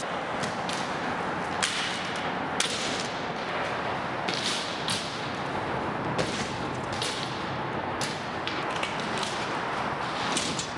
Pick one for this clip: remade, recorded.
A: recorded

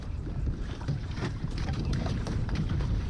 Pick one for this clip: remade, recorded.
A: remade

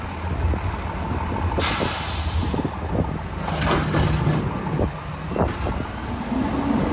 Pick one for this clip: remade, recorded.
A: recorded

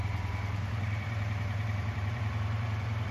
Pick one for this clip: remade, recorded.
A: remade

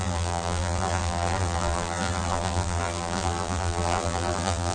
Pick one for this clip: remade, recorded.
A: remade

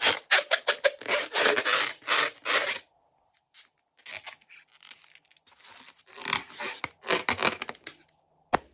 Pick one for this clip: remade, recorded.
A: recorded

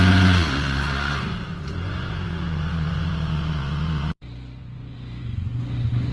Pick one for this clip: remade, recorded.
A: remade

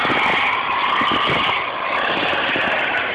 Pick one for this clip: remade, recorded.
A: recorded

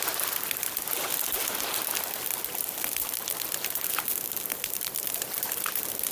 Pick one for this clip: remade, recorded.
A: recorded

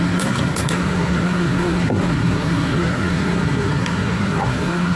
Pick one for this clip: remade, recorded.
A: remade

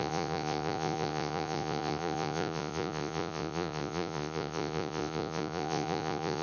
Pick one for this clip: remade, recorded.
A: remade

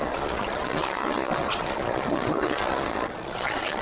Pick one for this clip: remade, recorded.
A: remade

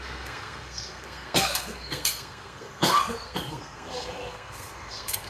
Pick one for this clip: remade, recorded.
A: remade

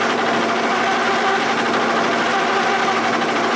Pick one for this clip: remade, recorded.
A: recorded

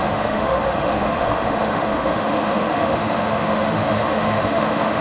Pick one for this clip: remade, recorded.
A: remade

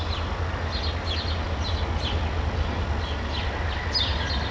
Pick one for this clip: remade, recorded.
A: recorded